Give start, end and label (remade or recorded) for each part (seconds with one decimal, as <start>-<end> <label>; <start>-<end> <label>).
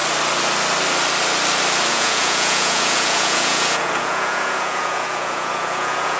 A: 0.0-1.9 recorded; 1.9-6.2 remade